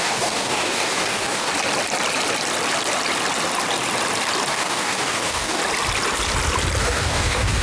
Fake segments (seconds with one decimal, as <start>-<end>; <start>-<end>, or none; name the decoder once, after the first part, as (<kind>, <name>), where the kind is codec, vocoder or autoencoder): 0.0-1.5 (codec, DAC); 4.5-5.6; 6.8-7.6